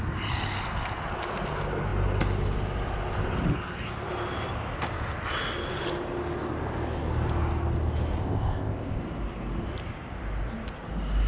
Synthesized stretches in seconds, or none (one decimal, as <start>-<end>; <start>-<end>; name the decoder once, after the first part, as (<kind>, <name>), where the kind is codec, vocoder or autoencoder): 8.2-9.0 (codec, ZipCodec)